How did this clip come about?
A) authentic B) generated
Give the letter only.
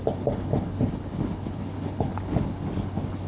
B